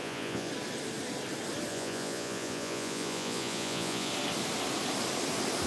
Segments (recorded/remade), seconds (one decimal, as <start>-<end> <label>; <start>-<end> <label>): 0.0-0.5 remade; 0.5-1.7 recorded; 1.7-4.1 remade; 4.1-5.7 recorded